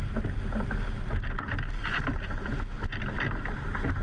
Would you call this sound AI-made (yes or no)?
no